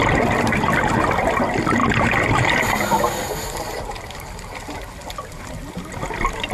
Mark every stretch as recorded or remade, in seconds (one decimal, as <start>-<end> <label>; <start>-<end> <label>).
0.0-6.5 recorded